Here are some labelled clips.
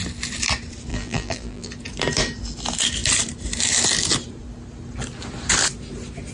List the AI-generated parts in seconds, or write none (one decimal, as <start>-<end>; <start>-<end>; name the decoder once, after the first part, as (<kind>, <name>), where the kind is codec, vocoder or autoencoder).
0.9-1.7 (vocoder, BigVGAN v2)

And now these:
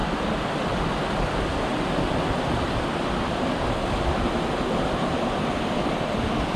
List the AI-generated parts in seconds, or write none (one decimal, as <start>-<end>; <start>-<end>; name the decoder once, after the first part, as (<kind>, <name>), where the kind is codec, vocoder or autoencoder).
none

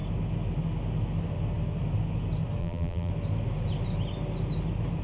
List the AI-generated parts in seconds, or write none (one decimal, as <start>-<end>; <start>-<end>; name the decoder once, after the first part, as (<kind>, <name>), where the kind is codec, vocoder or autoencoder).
2.6-3.1 (vocoder, BigVGAN v2)

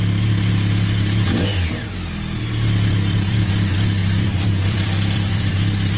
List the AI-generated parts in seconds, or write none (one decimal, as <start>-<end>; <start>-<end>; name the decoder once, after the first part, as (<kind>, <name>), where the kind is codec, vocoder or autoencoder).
1.5-3.5 (vocoder, BigVGAN v2); 4.0-5.5